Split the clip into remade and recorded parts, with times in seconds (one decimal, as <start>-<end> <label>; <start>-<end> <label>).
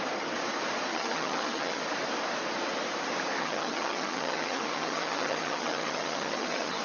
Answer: 0.0-0.9 recorded; 0.9-1.8 remade; 1.8-3.4 recorded; 3.4-6.8 remade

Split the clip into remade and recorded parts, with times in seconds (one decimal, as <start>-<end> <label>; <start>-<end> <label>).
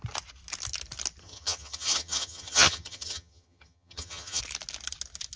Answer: 0.0-1.2 recorded; 1.2-4.4 remade; 4.4-5.4 recorded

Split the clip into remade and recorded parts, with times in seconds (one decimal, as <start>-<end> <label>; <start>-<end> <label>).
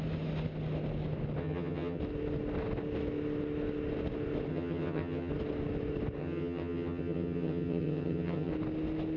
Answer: 0.0-1.4 recorded; 1.4-2.0 remade; 2.0-4.5 recorded; 4.5-5.3 remade; 5.3-6.2 recorded; 6.2-8.5 remade; 8.5-9.2 recorded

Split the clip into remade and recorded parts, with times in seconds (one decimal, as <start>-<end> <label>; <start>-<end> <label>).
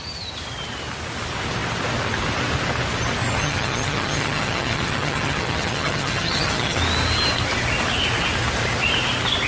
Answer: 0.0-3.4 recorded; 3.4-6.8 remade; 6.8-9.5 recorded